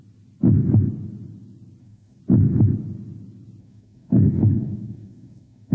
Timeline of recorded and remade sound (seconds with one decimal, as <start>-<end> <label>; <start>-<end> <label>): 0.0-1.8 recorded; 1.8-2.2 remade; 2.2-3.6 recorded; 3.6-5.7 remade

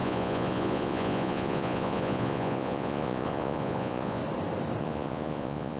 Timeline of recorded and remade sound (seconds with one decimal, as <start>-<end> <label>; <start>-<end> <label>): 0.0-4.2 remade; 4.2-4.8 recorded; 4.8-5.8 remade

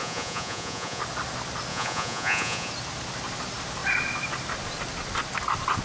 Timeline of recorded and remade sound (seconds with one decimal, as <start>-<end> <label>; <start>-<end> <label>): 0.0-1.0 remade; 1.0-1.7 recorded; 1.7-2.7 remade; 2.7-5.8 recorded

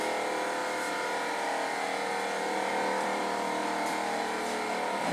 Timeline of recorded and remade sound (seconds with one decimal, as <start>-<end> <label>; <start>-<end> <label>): 0.0-2.7 recorded; 2.7-4.2 remade; 4.2-5.1 recorded

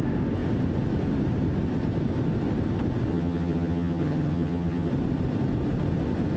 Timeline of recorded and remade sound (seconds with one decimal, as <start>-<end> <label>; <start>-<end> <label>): 0.0-3.1 recorded; 3.1-4.9 remade; 4.9-6.4 recorded

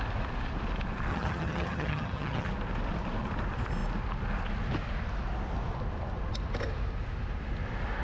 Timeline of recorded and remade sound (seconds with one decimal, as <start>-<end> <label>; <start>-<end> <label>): 0.0-1.1 recorded; 1.1-2.5 remade; 2.5-8.0 recorded